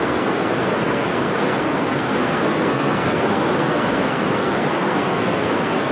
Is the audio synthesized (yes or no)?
yes